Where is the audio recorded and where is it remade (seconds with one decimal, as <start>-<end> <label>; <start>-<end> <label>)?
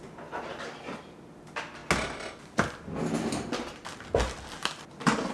0.0-5.3 recorded